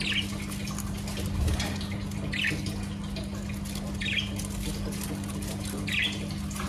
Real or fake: real